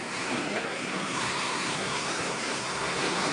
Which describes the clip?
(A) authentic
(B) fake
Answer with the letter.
B